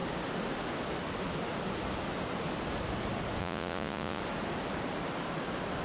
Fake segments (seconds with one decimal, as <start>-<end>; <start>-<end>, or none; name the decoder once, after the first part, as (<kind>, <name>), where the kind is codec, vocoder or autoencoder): 3.4-4.2 (vocoder, Vocos)